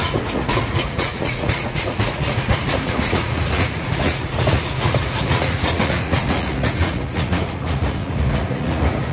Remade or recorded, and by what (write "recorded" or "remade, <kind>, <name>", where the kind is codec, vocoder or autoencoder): remade, vocoder, Vocos